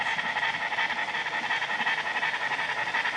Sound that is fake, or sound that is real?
real